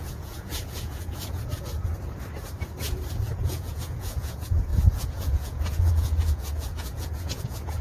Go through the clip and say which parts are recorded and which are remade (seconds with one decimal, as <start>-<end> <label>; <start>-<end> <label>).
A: 0.0-1.9 remade; 1.9-3.1 recorded; 3.1-7.8 remade

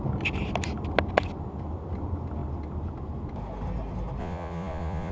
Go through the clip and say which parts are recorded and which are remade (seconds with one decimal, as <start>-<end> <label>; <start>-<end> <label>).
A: 0.0-4.2 recorded; 4.2-5.1 remade

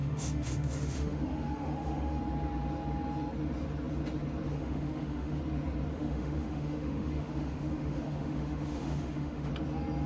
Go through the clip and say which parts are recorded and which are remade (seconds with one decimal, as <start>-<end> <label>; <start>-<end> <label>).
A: 0.0-2.2 remade; 2.2-4.5 recorded; 4.5-5.4 remade; 5.4-5.9 recorded; 5.9-9.5 remade; 9.5-10.1 recorded

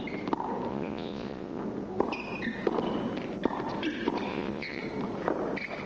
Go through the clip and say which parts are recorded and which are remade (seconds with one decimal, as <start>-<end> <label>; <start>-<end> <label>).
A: 0.0-0.7 recorded; 0.7-1.6 remade; 1.6-4.3 recorded; 4.3-4.8 remade; 4.8-5.9 recorded